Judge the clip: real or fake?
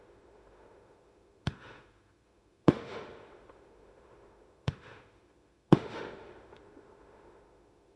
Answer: fake